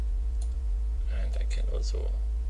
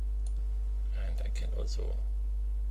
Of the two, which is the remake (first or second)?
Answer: first